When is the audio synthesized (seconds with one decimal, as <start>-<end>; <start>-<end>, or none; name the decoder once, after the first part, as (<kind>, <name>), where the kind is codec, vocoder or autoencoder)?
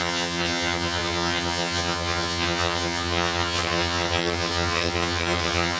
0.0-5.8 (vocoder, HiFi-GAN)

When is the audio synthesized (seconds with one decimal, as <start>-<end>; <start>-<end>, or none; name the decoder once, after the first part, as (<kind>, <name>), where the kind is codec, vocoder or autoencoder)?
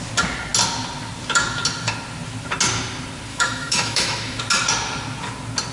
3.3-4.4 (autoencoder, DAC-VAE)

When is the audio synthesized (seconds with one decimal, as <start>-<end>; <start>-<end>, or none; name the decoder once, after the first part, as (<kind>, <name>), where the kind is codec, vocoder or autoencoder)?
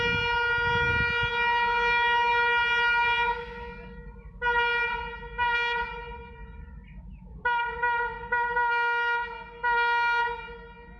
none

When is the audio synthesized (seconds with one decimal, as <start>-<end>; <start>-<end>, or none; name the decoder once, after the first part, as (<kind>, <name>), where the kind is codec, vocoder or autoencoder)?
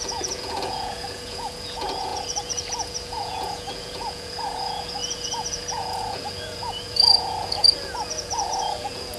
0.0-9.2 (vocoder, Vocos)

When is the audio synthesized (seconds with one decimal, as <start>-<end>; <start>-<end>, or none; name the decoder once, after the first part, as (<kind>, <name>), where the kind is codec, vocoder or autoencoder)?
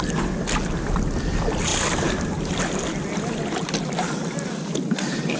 none